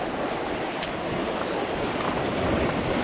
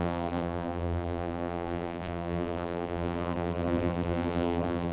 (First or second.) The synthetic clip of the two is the second